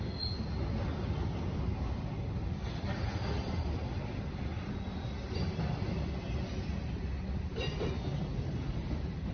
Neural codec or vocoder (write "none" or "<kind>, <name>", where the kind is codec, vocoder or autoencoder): none